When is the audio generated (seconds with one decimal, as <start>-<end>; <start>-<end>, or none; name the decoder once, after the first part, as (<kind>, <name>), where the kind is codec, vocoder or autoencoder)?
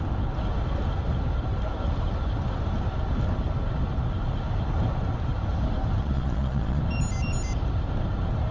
6.0-6.8 (vocoder, Vocos)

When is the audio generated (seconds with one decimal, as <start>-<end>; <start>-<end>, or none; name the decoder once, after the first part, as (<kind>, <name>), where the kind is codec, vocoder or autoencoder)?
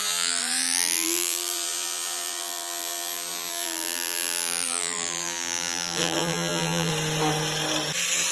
0.0-6.9 (vocoder, BigVGAN v2)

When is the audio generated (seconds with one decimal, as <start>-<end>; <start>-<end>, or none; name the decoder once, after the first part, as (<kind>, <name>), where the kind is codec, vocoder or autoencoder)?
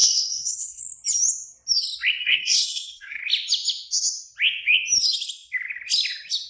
0.0-0.8 (codec, SNAC); 2.2-3.2